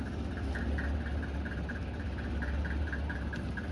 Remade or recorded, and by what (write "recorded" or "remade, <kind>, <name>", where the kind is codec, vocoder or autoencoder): recorded